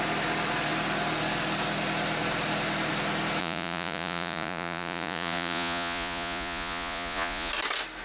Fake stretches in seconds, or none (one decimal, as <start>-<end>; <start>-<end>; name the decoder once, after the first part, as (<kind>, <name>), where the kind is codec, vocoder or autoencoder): 3.4-7.5 (vocoder, Vocos)